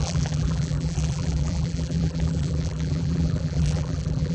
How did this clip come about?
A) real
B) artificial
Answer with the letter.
B